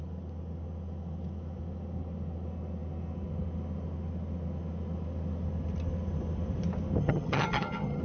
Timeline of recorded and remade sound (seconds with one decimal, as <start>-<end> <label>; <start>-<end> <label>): 0.0-7.0 recorded; 7.0-8.0 remade